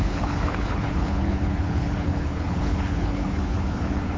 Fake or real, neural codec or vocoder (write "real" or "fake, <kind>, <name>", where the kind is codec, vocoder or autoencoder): fake, codec, HILCodec